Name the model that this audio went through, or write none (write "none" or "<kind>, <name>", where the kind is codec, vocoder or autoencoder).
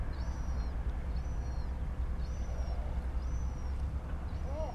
none